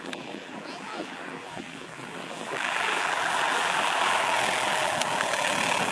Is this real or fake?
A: fake